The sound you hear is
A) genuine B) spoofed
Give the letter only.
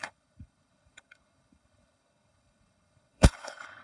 B